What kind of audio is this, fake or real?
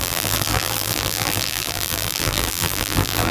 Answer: fake